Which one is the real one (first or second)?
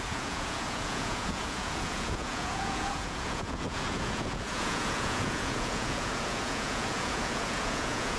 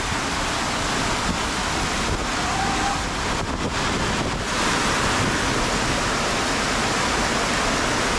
second